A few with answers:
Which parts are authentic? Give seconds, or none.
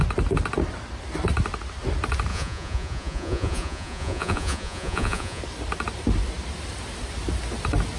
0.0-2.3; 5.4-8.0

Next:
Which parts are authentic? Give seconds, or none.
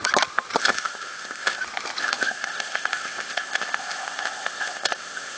0.0-0.6; 1.6-2.0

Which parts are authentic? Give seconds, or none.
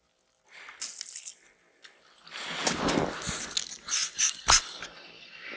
0.0-5.6